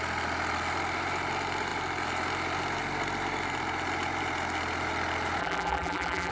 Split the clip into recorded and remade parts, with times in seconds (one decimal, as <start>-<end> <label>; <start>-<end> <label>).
0.0-5.4 recorded; 5.4-6.3 remade